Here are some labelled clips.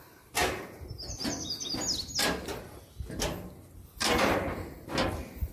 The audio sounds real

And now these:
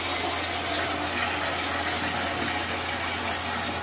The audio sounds real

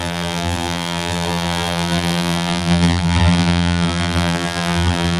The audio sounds fake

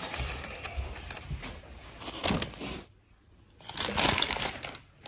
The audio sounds fake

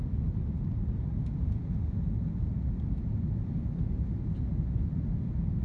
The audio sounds real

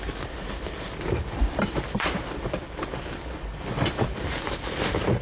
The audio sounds fake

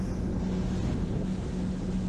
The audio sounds real